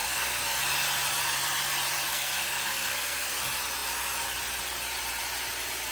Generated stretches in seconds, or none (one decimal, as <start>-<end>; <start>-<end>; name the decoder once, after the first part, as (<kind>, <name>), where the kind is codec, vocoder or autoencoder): 0.0-0.6 (codec, SNAC); 2.1-3.4